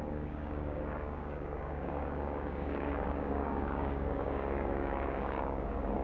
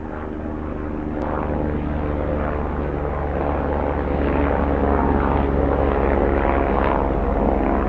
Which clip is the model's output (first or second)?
first